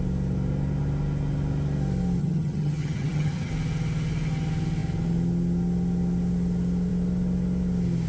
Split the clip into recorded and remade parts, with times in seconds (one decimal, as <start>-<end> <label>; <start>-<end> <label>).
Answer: 0.0-2.2 recorded; 2.2-3.5 remade; 3.5-8.1 recorded